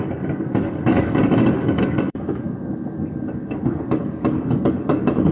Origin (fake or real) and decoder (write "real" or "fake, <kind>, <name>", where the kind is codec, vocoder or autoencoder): fake, codec, DAC